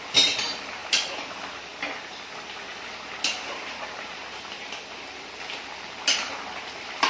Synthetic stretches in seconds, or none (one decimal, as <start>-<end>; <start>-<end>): none